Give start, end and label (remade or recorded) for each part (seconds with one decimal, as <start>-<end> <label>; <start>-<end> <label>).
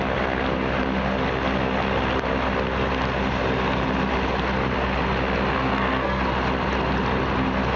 0.0-5.6 recorded; 5.6-6.2 remade; 6.2-7.8 recorded